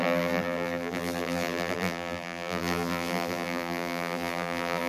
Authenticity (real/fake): fake